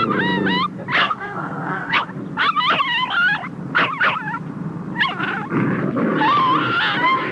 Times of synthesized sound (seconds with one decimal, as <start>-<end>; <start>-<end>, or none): 1.0-2.0